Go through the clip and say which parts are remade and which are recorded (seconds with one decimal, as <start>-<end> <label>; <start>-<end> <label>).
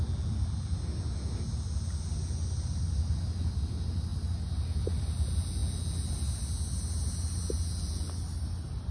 0.0-8.9 recorded